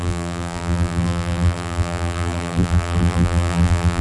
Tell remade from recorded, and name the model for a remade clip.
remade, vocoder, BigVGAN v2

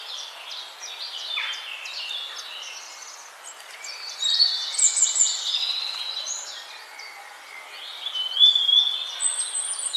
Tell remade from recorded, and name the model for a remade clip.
recorded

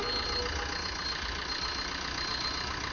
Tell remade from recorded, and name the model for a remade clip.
recorded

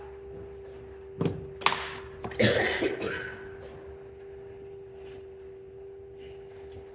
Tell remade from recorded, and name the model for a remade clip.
recorded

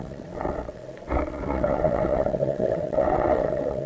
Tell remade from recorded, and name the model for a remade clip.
remade, vocoder, WaveNeXt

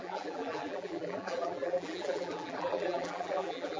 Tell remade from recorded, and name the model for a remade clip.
remade, vocoder, BigVGAN v2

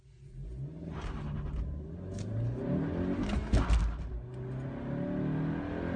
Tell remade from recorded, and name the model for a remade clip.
recorded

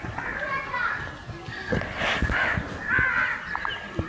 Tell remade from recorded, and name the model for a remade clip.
recorded